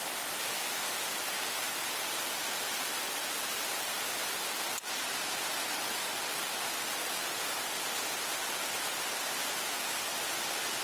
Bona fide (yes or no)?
yes